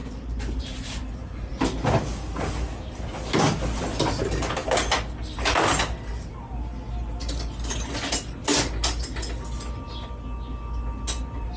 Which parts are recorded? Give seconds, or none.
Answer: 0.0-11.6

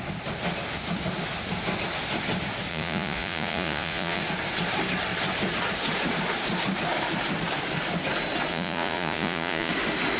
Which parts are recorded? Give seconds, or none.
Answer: 0.0-2.7; 4.2-8.5; 9.7-10.2